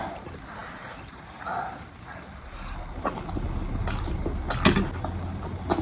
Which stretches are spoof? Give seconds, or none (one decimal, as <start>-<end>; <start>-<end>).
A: none